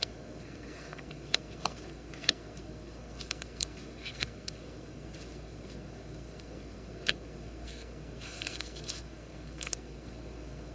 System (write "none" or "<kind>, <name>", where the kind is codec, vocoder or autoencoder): codec, SNAC